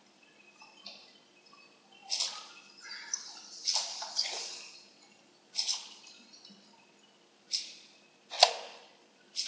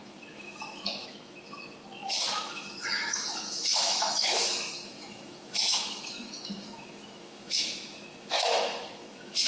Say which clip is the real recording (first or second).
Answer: first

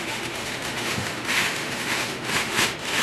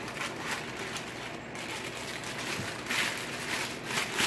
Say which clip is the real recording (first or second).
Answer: second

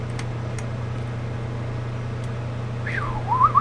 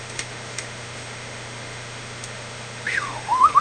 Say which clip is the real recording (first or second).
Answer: first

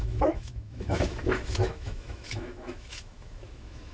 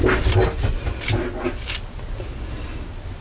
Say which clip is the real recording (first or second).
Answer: second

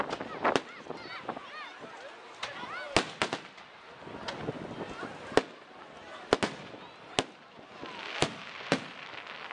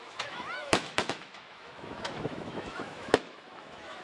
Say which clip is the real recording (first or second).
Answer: first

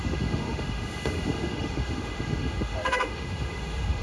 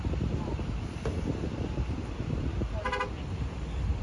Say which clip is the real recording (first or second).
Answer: second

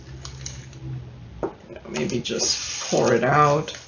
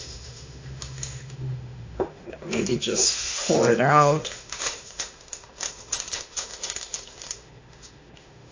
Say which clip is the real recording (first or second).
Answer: first